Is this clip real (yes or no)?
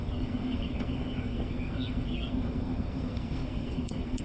no